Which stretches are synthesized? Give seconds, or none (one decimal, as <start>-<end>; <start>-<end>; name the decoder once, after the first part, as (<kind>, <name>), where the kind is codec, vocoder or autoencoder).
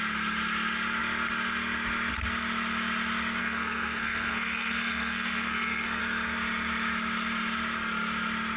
3.4-6.0 (codec, SNAC)